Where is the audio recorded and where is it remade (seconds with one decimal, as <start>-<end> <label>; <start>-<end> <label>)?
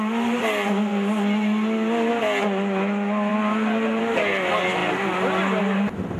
0.0-6.2 recorded